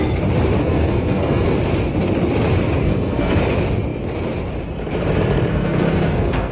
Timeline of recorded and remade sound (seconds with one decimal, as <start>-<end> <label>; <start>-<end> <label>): 0.0-0.6 recorded; 0.6-1.6 remade; 1.6-2.8 recorded; 2.8-3.4 remade; 3.4-5.5 recorded; 5.5-6.5 remade